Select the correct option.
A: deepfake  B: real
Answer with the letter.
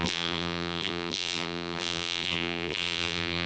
A